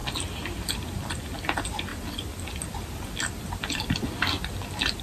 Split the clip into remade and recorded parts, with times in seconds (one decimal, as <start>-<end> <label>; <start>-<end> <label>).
0.0-1.1 remade; 1.1-1.9 recorded; 1.9-5.0 remade